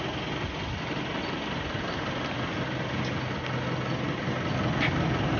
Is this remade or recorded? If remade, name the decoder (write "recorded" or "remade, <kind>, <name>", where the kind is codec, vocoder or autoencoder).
recorded